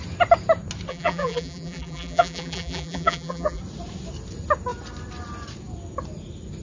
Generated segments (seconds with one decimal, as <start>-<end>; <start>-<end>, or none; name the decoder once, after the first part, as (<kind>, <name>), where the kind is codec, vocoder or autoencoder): 0.9-3.6 (vocoder, BigVGAN v2)